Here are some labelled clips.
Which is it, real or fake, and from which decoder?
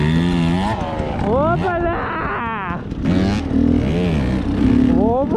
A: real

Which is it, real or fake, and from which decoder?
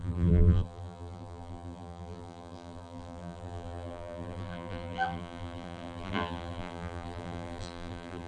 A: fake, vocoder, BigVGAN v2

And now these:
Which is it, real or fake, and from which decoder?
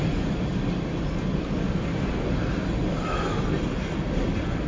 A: real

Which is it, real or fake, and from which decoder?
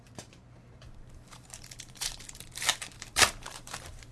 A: fake, vocoder, BigVGAN v2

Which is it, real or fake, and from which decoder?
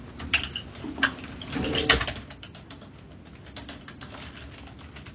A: real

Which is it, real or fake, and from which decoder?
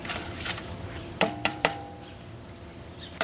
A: fake, vocoder, BigVGAN v2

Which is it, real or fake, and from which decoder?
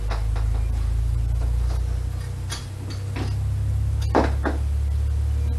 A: real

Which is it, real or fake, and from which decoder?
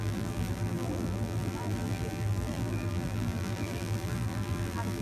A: fake, vocoder, BigVGAN v2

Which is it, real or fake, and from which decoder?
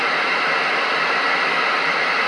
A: fake, vocoder, BigVGAN v2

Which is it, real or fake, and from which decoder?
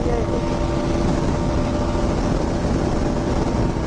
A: real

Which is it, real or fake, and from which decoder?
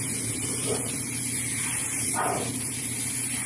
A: fake, vocoder, BigVGAN v2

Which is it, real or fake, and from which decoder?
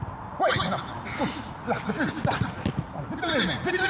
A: real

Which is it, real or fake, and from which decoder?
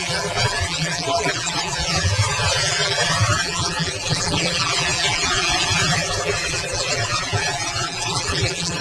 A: fake, vocoder, BigVGAN v2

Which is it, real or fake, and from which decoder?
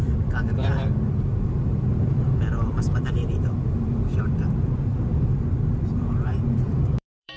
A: fake, vocoder, BigVGAN v2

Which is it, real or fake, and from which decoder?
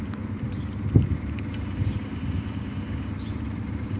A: fake, vocoder, BigVGAN v2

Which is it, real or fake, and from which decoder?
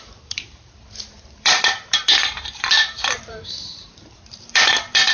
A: fake, vocoder, BigVGAN v2